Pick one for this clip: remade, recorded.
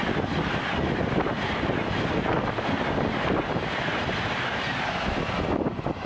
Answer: recorded